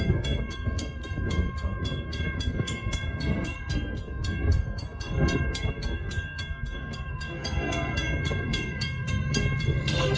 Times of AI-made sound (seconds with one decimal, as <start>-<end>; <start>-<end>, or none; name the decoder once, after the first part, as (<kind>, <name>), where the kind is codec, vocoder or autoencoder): 0.0-10.2 (codec, SNAC)